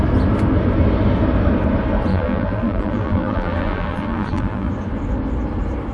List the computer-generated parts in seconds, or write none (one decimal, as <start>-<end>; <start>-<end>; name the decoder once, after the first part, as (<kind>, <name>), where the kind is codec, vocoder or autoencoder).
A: 2.1-4.7 (vocoder, BigVGAN v2)